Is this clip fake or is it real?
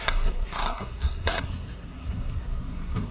fake